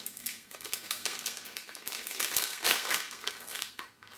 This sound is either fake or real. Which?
fake